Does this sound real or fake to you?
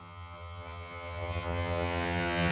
fake